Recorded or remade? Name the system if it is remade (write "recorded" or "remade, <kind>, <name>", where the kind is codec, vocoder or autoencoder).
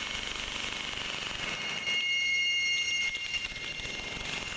recorded